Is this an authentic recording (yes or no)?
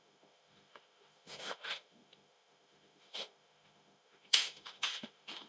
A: no